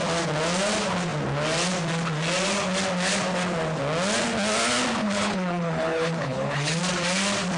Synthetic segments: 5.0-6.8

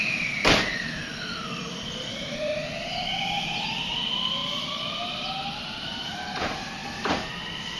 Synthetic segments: 0.0-2.5; 3.3-4.4; 5.4-7.8

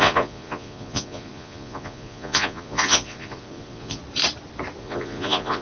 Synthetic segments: 0.0-4.0; 4.8-5.6